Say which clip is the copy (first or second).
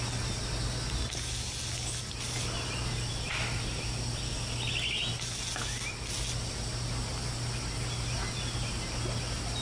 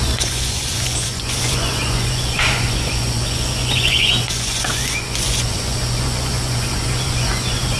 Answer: second